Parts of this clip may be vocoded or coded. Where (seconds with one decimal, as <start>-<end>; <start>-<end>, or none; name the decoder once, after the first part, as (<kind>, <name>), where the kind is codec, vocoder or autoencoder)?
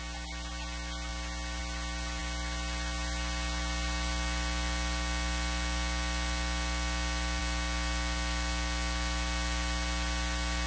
none